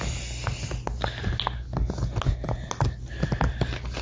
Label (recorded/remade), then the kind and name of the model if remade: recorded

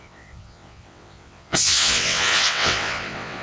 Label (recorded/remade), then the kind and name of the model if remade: remade, vocoder, WaveNeXt